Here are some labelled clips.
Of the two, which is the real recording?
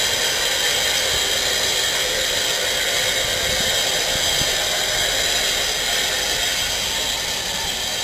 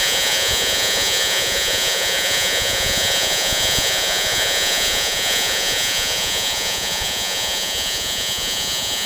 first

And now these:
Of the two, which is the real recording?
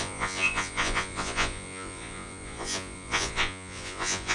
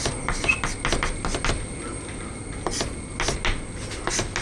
second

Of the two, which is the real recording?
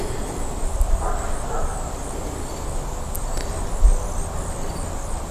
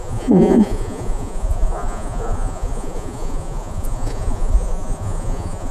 first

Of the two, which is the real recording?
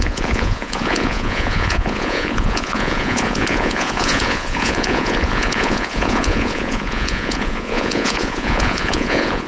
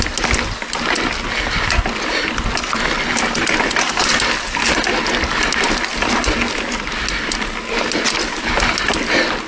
second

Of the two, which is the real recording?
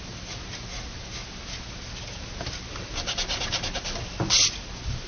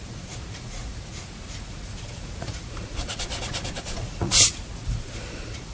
first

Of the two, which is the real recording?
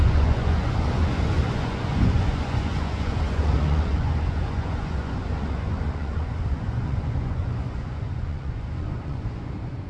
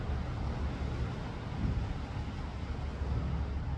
second